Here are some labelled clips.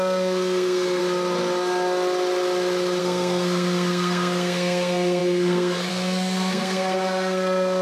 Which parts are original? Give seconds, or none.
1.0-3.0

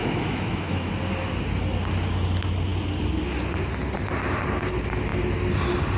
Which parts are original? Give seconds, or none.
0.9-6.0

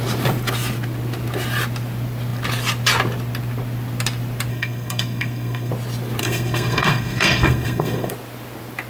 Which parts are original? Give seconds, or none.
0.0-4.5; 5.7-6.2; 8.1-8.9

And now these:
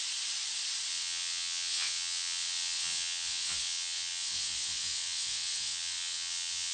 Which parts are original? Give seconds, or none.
0.0-0.9